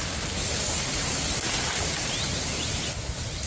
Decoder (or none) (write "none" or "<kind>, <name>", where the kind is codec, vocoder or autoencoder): none